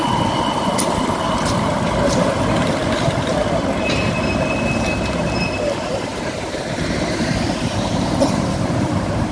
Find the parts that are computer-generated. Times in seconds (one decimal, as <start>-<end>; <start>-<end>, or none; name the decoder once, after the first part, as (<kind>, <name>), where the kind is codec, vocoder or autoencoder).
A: 6.1-9.3 (vocoder, BigVGAN v2)